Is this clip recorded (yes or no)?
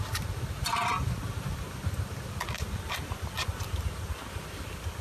yes